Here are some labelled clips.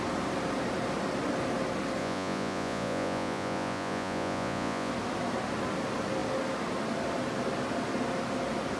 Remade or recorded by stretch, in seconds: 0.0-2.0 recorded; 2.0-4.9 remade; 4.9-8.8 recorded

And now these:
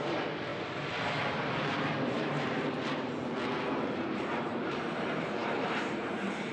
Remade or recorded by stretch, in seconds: 0.0-0.5 remade; 0.5-2.1 recorded; 2.1-3.2 remade; 3.2-3.9 recorded; 3.9-6.5 remade

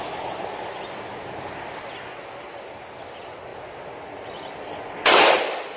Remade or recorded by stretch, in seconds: 0.0-5.8 recorded

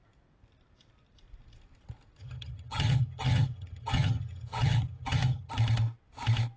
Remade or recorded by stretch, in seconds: 0.0-2.2 recorded; 2.2-5.5 remade; 5.5-6.6 recorded

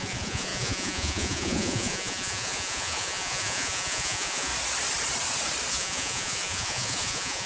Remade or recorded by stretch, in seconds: 0.0-4.5 remade; 4.5-5.7 recorded; 5.7-7.5 remade

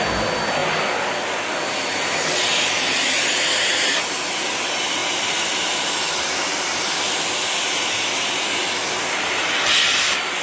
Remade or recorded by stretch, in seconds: 0.0-5.0 recorded; 5.0-5.6 remade; 5.6-10.4 recorded

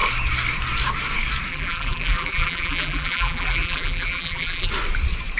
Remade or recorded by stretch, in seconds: 0.0-1.5 recorded; 1.5-4.7 remade; 4.7-5.4 recorded

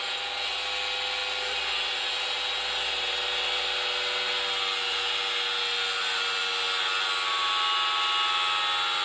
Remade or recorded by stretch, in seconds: 0.0-9.0 recorded